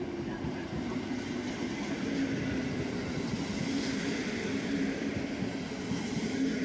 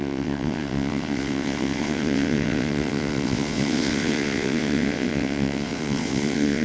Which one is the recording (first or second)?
first